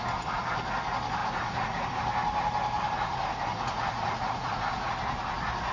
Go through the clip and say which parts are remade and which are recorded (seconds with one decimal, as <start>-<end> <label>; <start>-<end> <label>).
0.0-1.2 recorded; 1.2-1.9 remade; 1.9-3.1 recorded; 3.1-4.9 remade; 4.9-5.7 recorded